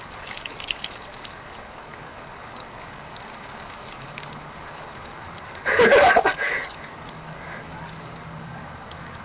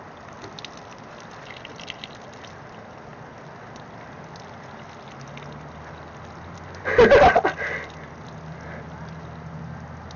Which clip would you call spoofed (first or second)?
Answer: first